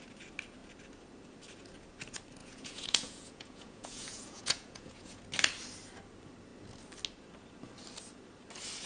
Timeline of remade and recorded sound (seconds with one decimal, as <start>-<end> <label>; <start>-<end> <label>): 0.0-2.4 recorded; 2.4-5.2 remade; 5.2-8.9 recorded